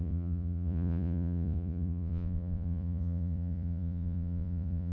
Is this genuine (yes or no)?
no